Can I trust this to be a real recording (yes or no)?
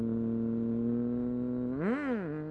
yes